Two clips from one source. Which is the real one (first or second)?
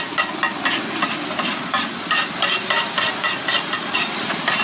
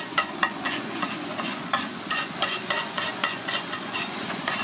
first